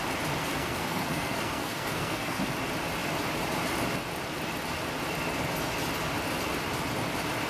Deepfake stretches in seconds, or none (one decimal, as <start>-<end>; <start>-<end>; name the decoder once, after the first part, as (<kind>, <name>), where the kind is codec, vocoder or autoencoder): 0.4-2.5 (codec, SNAC)